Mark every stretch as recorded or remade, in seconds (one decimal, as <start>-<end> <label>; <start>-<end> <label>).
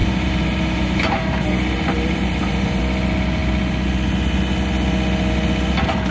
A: 0.0-2.8 remade; 2.8-6.1 recorded